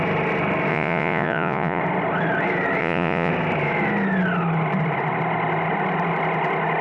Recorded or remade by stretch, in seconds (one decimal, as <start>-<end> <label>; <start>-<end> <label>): 0.0-0.7 recorded; 0.7-1.8 remade; 1.8-2.8 recorded; 2.8-3.3 remade; 3.3-6.8 recorded